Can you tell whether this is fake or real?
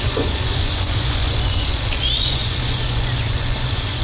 fake